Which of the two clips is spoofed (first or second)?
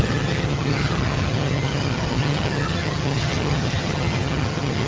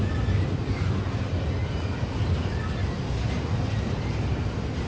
first